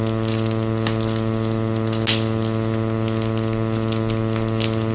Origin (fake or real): real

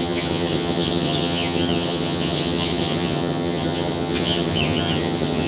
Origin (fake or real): fake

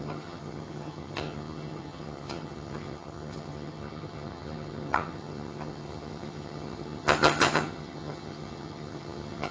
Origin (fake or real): fake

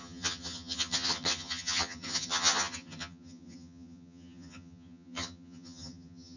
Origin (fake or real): fake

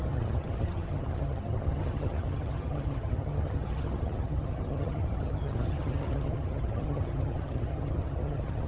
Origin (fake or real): fake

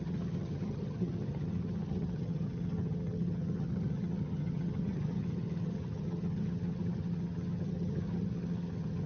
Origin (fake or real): fake